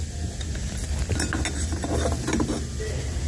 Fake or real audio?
real